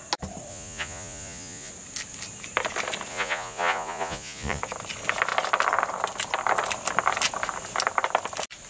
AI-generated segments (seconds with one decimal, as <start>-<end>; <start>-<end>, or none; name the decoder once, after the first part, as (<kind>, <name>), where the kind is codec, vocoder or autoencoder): 0.5-1.7 (vocoder, Vocos); 3.1-4.6